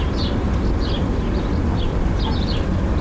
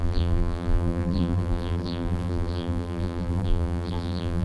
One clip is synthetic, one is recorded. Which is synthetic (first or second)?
second